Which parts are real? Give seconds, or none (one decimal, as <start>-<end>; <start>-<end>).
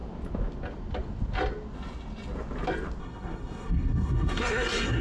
0.0-3.0